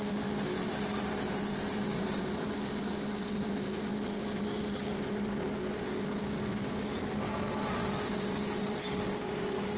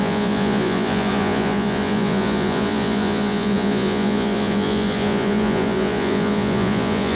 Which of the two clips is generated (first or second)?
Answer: second